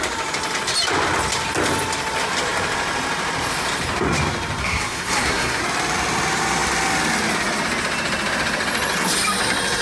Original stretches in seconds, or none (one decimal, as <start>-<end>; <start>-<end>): 0.0-4.6; 5.6-9.8